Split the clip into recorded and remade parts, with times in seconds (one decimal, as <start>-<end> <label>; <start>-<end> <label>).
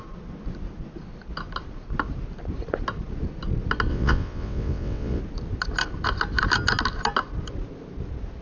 0.0-3.9 recorded; 3.9-5.2 remade; 5.2-8.4 recorded